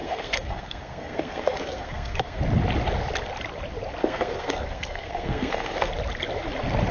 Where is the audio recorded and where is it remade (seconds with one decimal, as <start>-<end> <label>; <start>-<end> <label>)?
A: 0.0-2.4 remade; 2.4-4.0 recorded; 4.0-5.9 remade; 5.9-6.9 recorded